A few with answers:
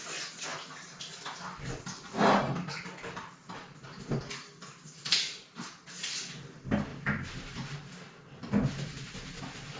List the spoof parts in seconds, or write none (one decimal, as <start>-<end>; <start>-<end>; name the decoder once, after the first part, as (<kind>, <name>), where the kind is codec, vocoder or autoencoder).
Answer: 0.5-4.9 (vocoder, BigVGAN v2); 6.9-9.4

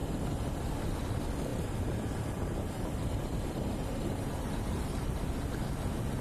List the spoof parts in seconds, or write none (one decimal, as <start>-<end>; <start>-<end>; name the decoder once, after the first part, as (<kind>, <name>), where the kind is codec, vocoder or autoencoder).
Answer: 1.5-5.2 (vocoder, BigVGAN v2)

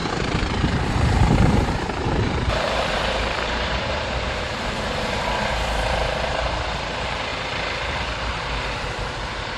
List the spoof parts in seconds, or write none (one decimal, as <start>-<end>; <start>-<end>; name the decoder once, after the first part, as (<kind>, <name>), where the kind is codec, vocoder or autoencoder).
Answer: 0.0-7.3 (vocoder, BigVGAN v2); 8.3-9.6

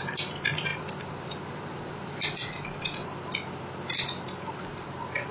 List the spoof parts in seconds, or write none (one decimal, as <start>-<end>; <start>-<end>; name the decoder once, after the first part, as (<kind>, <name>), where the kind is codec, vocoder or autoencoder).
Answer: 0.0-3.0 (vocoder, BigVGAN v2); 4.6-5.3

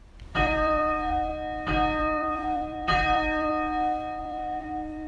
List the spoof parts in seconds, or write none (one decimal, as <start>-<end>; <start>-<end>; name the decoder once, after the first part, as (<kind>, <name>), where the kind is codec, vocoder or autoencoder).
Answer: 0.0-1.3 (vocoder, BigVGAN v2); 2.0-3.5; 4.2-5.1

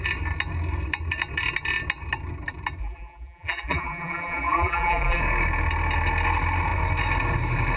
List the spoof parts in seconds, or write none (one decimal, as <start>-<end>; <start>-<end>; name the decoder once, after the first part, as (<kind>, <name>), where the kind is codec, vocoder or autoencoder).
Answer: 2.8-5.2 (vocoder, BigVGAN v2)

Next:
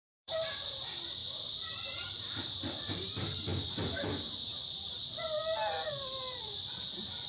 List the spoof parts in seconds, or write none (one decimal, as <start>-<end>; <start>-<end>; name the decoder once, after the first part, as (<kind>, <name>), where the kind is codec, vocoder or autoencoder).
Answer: 0.0-1.2 (vocoder, BigVGAN v2); 1.9-5.4; 6.2-7.3